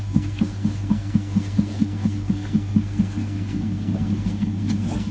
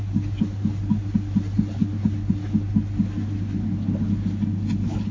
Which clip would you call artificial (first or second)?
first